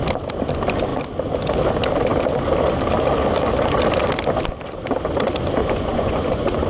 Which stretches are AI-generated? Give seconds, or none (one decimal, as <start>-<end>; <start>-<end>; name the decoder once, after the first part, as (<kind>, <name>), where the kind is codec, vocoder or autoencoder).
5.6-6.7 (vocoder, Vocos)